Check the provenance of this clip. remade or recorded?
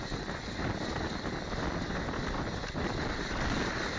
recorded